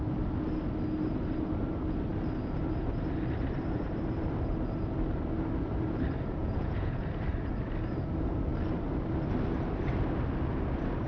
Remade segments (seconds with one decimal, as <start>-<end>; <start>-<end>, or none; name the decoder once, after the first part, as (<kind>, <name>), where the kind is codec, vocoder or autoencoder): 6.4-7.0 (vocoder, Vocos)